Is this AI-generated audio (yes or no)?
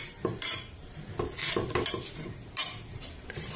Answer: yes